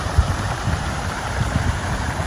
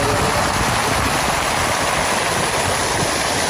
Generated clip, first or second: first